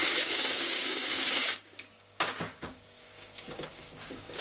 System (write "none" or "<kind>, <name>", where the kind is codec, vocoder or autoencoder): codec, DAC